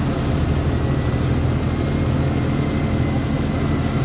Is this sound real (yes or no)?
yes